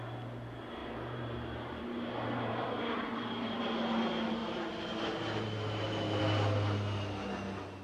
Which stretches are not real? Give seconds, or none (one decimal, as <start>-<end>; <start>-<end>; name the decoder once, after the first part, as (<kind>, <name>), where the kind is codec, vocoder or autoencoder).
0.8-3.6 (vocoder, BigVGAN v2); 4.4-6.2